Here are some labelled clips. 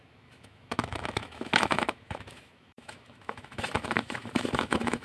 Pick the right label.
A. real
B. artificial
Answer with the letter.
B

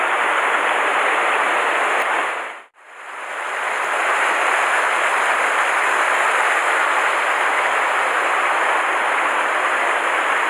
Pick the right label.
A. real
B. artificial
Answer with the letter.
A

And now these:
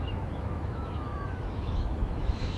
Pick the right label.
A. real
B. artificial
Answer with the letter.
B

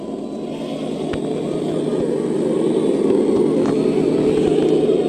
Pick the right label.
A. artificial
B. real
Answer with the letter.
B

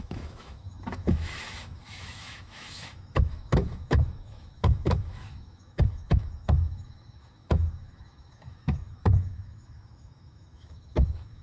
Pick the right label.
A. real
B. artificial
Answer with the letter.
B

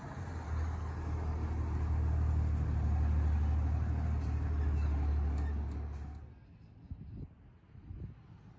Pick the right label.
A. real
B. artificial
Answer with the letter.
A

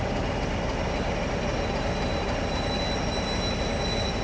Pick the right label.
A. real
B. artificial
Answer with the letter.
A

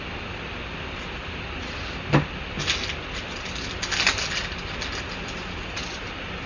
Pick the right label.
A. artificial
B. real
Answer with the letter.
B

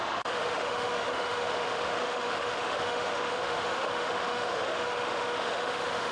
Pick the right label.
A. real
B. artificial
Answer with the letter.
B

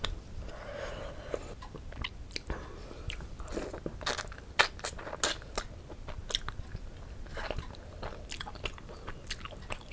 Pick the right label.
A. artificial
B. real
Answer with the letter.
B